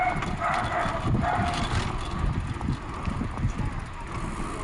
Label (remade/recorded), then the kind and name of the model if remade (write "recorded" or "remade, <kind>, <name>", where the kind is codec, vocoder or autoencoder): recorded